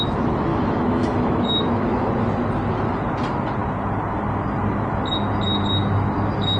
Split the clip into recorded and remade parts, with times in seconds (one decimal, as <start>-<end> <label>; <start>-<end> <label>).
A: 0.0-0.5 recorded; 0.5-2.1 remade; 2.1-6.6 recorded